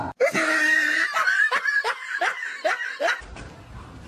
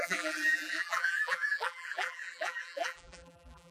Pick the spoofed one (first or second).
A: second